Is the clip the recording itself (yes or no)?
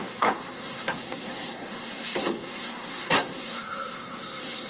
no